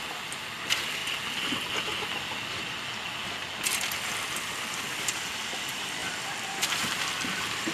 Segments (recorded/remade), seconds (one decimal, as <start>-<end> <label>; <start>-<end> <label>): 0.0-1.0 remade; 1.0-4.1 recorded; 4.1-7.7 remade